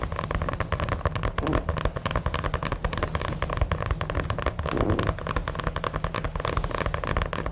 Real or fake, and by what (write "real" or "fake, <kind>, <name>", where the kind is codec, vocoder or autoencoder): real